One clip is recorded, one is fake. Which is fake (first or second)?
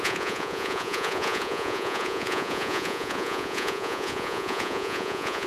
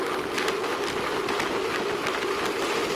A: first